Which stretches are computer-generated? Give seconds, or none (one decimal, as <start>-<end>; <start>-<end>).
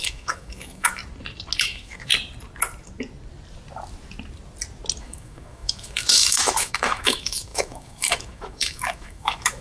0.0-1.0; 1.6-2.1; 5.0-9.6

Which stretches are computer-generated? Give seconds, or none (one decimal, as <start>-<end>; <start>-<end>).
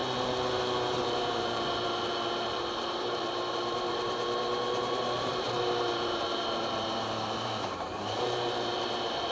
1.0-9.3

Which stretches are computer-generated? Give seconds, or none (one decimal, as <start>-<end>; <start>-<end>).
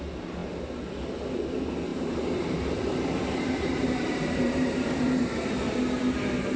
1.9-5.9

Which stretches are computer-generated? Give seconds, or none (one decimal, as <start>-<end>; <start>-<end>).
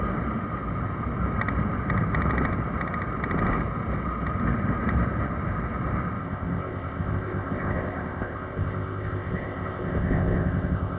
6.2-11.0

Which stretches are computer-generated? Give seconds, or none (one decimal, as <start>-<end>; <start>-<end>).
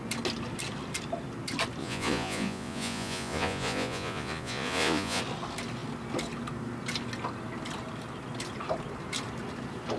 1.8-5.2